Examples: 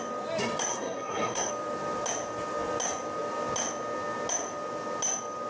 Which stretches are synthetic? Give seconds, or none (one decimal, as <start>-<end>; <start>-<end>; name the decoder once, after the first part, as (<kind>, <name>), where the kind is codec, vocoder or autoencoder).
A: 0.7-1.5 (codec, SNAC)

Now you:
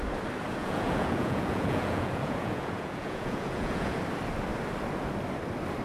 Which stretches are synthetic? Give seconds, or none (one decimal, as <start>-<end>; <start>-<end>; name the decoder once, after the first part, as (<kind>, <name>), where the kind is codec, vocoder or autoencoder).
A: 0.6-4.0 (vocoder, Vocos)

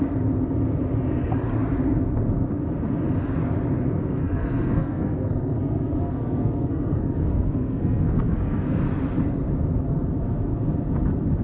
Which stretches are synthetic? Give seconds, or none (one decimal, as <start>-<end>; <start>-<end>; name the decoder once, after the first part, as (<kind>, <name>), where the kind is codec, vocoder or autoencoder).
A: 4.0-8.8 (codec, SNAC)

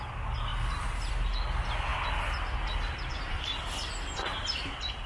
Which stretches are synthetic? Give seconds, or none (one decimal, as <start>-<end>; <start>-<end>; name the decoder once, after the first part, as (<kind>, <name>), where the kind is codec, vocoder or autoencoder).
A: 0.5-1.1 (vocoder, BigVGAN v2)